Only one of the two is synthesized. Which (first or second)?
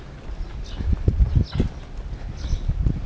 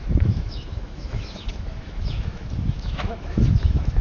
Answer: second